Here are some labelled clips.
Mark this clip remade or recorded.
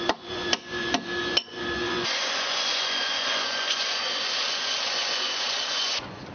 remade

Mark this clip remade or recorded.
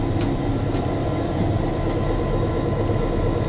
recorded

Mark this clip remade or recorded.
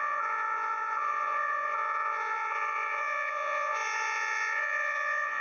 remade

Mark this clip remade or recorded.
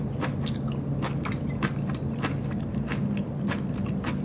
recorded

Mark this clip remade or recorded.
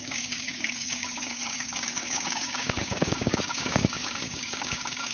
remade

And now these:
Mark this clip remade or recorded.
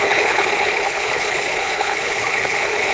remade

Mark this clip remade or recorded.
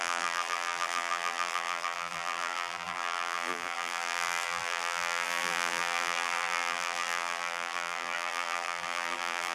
remade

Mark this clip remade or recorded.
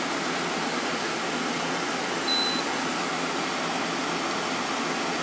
recorded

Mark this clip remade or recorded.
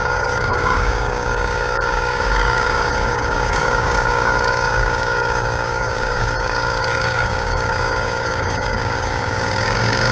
remade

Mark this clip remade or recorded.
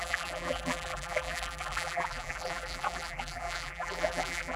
remade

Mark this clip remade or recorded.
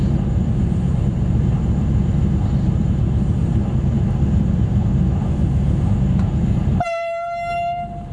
remade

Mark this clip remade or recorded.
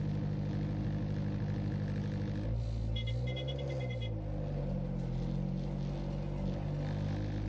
recorded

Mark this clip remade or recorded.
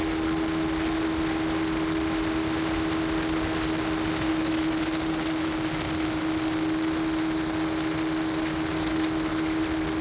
recorded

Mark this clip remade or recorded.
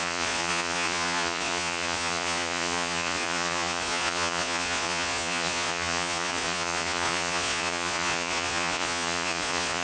remade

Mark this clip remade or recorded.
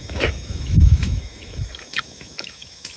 remade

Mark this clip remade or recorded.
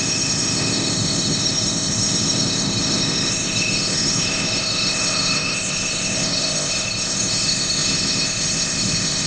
remade